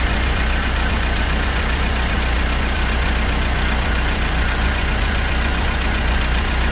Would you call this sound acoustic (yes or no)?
no